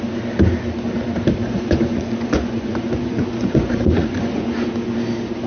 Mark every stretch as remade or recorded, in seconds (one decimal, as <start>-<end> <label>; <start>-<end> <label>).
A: 0.0-1.4 recorded; 1.4-4.7 remade; 4.7-5.5 recorded